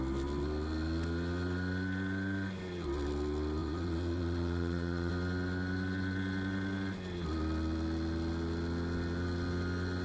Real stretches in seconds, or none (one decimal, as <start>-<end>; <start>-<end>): 0.0-3.6; 5.1-10.0